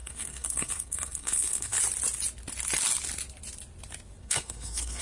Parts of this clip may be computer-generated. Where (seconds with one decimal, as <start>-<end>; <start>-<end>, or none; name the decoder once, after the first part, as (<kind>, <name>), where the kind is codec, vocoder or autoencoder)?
0.0-1.8 (codec, SNAC); 4.2-5.0